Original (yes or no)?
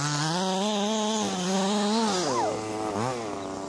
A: yes